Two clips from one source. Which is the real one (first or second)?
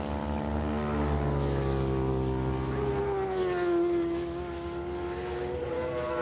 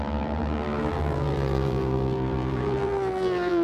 first